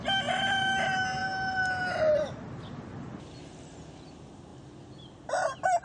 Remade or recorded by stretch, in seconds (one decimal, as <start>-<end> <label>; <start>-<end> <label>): 0.0-5.8 recorded